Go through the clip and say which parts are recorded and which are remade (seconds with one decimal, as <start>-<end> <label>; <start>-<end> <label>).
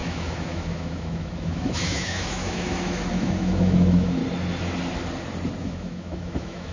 0.0-4.2 remade; 4.2-5.6 recorded; 5.6-6.7 remade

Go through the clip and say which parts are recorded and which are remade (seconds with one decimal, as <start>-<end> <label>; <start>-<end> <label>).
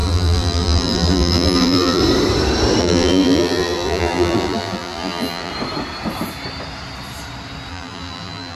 0.0-2.0 remade; 2.0-2.8 recorded; 2.8-5.5 remade; 5.5-7.7 recorded; 7.7-8.6 remade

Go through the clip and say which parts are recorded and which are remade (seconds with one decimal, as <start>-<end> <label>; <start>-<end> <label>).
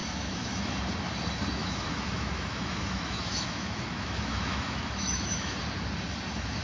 0.0-0.7 remade; 0.7-1.6 recorded; 1.6-5.6 remade; 5.6-6.6 recorded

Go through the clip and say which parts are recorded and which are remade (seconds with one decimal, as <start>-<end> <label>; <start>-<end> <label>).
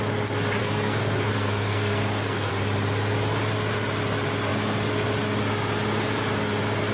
0.0-0.6 recorded; 0.6-2.5 remade; 2.5-6.9 recorded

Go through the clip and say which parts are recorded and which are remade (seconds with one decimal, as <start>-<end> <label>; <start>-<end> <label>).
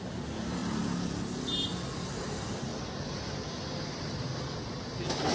0.0-5.3 recorded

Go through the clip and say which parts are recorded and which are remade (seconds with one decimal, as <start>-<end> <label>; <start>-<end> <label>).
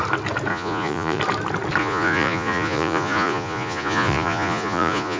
0.0-0.5 recorded; 0.5-1.2 remade; 1.2-1.8 recorded; 1.8-5.2 remade